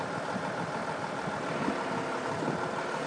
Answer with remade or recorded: recorded